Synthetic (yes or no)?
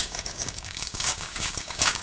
yes